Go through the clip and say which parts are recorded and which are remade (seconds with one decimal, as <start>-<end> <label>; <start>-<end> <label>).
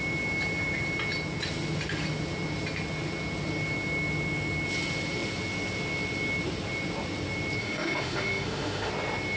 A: 0.0-7.6 recorded; 7.6-8.9 remade; 8.9-9.4 recorded